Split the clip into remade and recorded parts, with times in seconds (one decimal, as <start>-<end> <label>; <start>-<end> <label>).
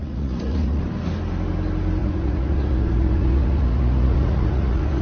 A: 0.0-0.8 remade; 0.8-2.0 recorded; 2.0-5.0 remade